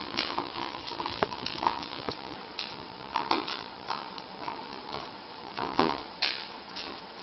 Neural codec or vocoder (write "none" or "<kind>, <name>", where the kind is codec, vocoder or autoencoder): vocoder, WaveNeXt